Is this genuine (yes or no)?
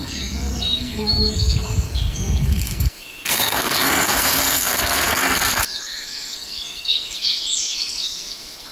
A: no